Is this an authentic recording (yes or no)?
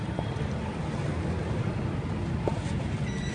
yes